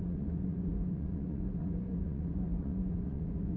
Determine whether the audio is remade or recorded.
remade